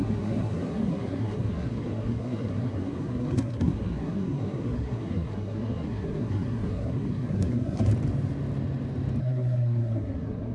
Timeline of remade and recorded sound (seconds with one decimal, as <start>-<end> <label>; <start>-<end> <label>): 0.0-7.9 remade; 7.9-9.2 recorded; 9.2-10.5 remade